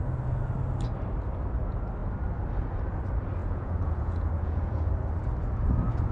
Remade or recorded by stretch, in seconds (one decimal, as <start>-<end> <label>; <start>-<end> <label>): 0.0-3.4 recorded; 3.4-4.9 remade; 4.9-6.1 recorded